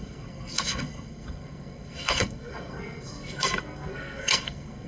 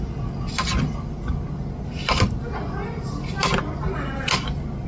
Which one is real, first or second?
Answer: second